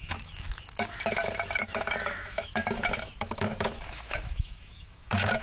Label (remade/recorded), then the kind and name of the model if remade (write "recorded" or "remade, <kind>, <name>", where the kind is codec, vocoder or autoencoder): remade, autoencoder, DAC-VAE